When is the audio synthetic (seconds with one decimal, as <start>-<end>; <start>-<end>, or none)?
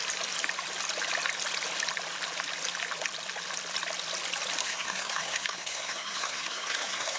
4.6-7.2